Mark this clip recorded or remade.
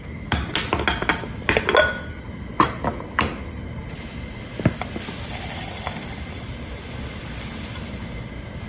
recorded